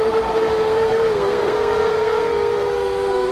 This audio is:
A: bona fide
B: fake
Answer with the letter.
B